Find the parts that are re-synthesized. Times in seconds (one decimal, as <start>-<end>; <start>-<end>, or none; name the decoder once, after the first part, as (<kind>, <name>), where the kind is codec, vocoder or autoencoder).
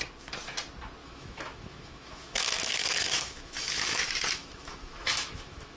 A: 1.0-4.0 (autoencoder, DAC-VAE); 4.4-5.8